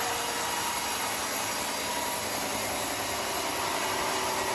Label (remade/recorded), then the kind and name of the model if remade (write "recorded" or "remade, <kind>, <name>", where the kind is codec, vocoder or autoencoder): recorded